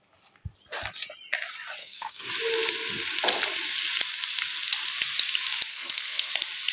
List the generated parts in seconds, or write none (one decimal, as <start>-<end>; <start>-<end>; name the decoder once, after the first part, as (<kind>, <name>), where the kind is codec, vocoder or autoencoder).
1.8-2.3 (codec, SNAC); 5.7-6.3